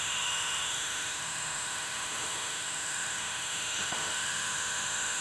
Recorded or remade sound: remade